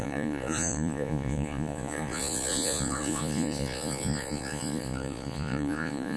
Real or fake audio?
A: fake